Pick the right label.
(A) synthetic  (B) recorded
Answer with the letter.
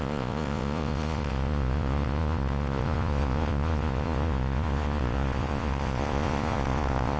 A